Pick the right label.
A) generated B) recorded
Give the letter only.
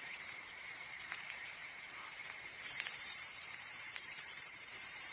A